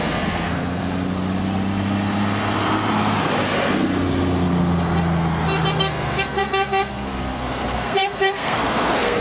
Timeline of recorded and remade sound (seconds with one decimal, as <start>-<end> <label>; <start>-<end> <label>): 0.0-0.8 remade; 0.8-5.8 recorded; 5.8-9.2 remade

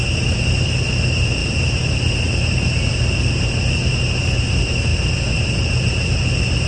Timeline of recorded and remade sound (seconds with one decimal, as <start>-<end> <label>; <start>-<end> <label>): 0.0-6.7 recorded

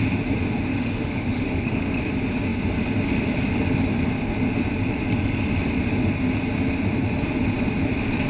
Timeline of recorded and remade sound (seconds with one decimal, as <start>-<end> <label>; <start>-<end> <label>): 0.0-0.7 recorded; 0.7-2.0 remade; 2.0-8.3 recorded

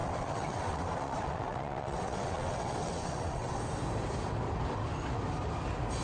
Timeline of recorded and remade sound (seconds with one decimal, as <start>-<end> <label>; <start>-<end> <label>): 0.0-3.6 remade; 3.6-6.0 recorded

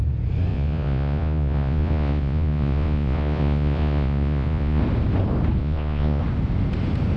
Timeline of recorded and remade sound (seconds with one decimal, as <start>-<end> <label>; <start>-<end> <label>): 0.0-0.5 recorded; 0.5-4.8 remade; 4.8-5.6 recorded; 5.6-6.2 remade; 6.2-7.2 recorded

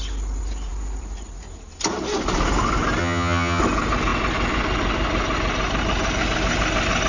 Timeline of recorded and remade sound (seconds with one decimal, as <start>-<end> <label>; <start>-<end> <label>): 0.0-3.0 recorded; 3.0-3.6 remade; 3.6-7.1 recorded

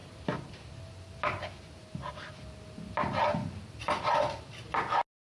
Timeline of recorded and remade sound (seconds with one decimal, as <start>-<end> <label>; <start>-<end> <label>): 0.0-5.3 recorded

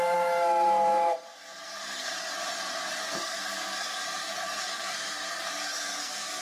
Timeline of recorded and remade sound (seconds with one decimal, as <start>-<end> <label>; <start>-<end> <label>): 0.0-2.1 remade; 2.1-3.0 recorded; 3.0-6.4 remade